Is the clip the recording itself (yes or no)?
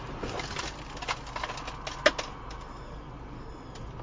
yes